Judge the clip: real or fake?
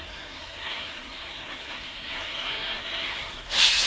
fake